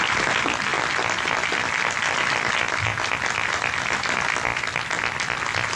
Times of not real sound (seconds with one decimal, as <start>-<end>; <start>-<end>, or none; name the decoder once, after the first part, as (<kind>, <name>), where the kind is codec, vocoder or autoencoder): none